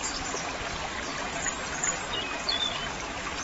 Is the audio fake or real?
real